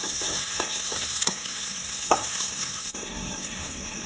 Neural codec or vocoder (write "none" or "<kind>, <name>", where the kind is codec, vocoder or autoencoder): codec, SNAC